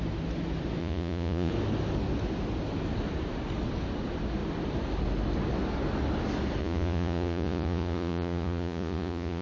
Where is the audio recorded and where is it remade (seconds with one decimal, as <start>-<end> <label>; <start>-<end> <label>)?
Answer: 0.0-0.8 recorded; 0.8-1.5 remade; 1.5-6.6 recorded; 6.6-9.4 remade